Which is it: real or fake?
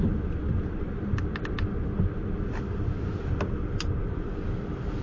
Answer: real